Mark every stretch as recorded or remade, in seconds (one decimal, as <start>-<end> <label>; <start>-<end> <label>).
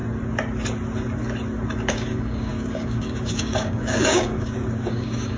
0.0-1.9 recorded; 1.9-5.4 remade